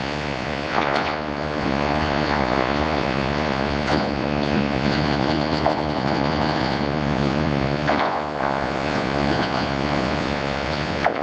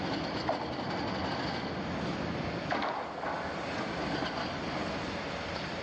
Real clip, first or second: second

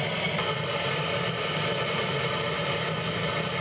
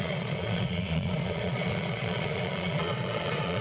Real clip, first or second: first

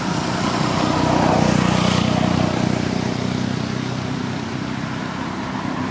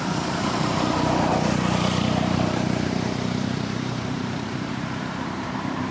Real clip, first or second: first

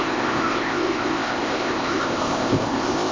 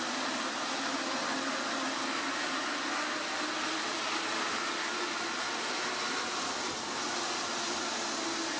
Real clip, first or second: second